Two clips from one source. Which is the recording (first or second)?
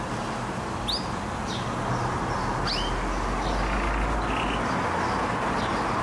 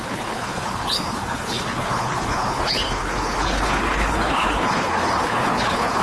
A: first